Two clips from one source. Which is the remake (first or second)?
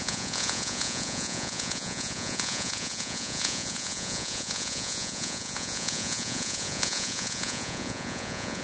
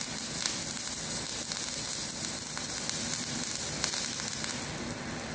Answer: first